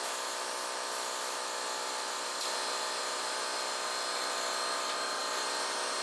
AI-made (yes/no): no